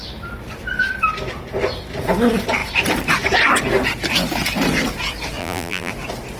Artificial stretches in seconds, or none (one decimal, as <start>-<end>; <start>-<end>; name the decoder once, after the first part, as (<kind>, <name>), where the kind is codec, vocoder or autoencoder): 5.4-5.9 (vocoder, BigVGAN v2)